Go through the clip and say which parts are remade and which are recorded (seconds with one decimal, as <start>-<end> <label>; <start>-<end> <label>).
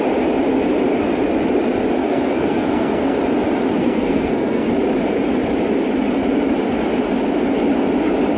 0.0-2.0 recorded; 2.0-3.2 remade; 3.2-3.8 recorded; 3.8-4.7 remade; 4.7-8.4 recorded